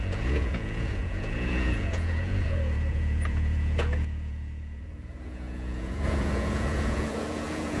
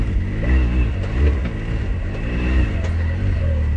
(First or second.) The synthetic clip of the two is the first